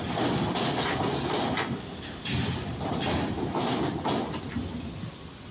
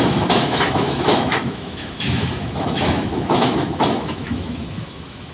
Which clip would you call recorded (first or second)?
first